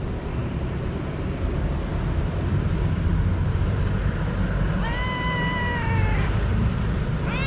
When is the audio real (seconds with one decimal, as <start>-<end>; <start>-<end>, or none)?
0.0-0.4; 1.1-1.9; 4.3-6.5; 7.1-7.5